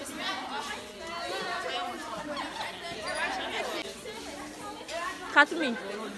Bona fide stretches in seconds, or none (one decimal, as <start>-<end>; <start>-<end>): 0.0-6.2